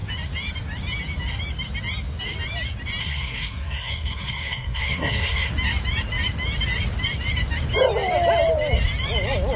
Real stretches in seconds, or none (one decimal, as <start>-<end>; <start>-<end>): 0.0-3.0; 5.5-9.6